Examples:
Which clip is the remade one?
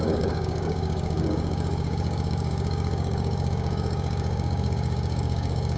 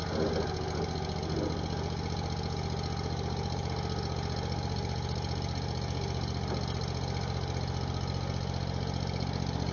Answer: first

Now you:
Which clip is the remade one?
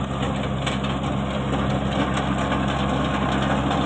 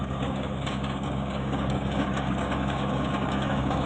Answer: second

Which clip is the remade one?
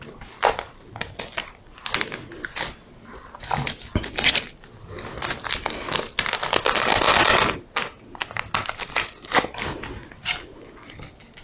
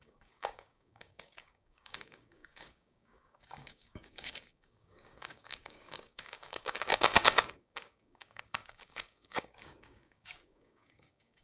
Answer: second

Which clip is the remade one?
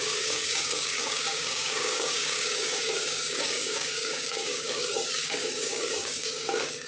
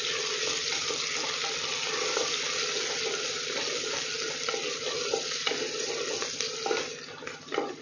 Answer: first